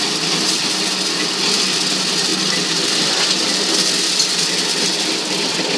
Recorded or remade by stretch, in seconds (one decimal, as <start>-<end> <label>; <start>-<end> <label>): 0.0-5.8 recorded